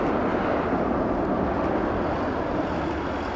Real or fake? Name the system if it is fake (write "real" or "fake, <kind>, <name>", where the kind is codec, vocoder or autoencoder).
real